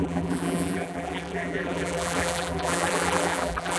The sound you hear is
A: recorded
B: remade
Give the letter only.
B